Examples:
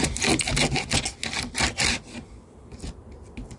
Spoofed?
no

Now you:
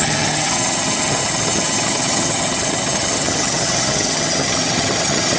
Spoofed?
yes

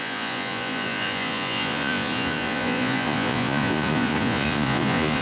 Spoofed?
yes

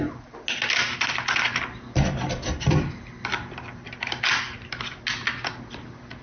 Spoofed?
no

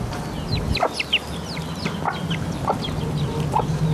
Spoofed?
no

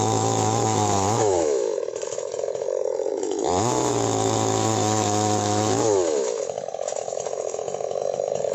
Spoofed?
yes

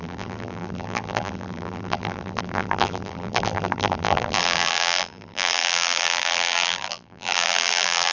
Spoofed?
yes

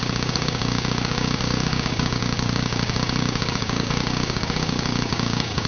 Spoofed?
yes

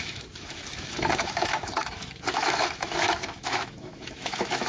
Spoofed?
yes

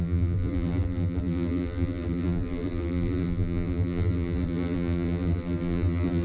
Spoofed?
yes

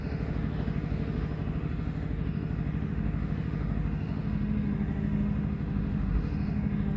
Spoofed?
yes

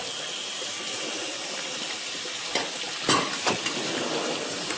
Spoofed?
no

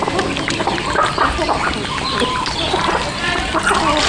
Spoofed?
no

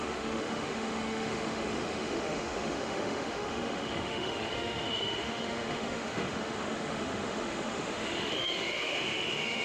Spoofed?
yes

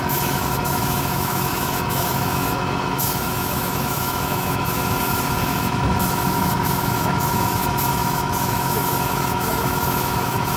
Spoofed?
yes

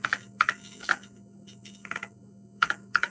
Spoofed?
yes